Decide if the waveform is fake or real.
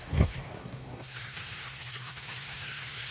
fake